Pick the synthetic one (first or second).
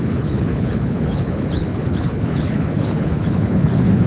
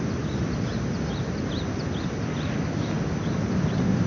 first